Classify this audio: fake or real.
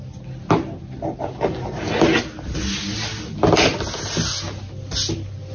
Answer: real